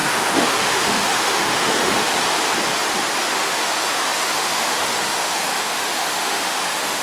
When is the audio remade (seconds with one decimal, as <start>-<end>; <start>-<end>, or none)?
0.0-2.1; 3.3-7.0